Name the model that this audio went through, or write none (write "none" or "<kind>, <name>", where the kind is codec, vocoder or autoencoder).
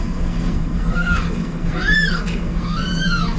codec, SNAC